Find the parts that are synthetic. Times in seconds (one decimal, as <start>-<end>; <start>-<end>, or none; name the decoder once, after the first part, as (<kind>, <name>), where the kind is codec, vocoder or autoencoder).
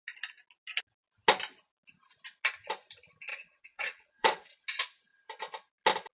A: 3.3-4.5 (vocoder, WaveNeXt)